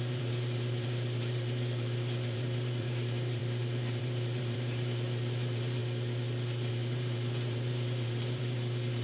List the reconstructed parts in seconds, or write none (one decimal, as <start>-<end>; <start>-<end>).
0.0-5.8; 6.7-9.0